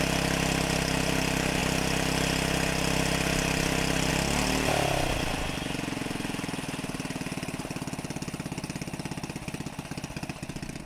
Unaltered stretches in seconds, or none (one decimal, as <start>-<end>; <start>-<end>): 0.0-10.9